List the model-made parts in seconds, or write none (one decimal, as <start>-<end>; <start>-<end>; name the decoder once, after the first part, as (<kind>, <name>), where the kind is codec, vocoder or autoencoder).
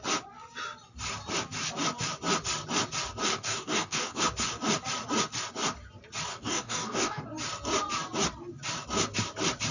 3.3-4.2 (codec, DAC); 6.3-7.2